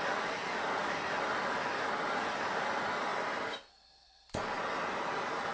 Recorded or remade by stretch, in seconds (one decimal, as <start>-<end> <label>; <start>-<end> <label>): 0.0-5.5 recorded